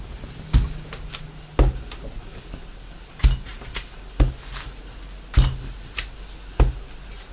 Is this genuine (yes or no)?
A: yes